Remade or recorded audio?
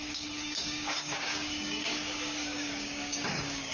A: remade